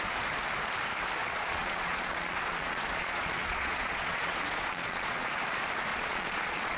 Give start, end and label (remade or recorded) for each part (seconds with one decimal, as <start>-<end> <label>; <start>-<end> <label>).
0.0-1.2 recorded; 1.2-5.3 remade; 5.3-5.9 recorded; 5.9-6.8 remade